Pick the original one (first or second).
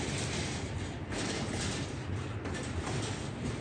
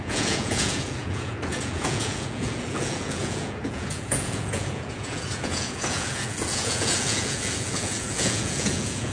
first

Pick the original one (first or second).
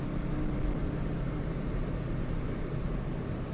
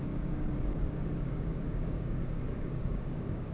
first